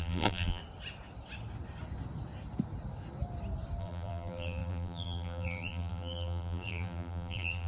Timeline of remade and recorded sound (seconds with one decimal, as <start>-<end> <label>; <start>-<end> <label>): 0.0-0.6 remade; 0.6-3.8 recorded; 3.8-7.7 remade